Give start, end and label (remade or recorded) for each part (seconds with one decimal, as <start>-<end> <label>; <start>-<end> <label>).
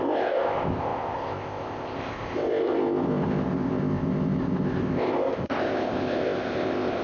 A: 0.0-7.0 remade